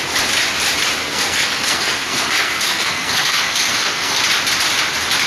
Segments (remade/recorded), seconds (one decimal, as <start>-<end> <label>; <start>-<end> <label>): 0.0-1.0 recorded; 1.0-4.2 remade; 4.2-5.3 recorded

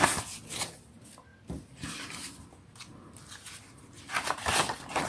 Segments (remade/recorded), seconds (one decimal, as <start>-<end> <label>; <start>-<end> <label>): 0.0-5.1 recorded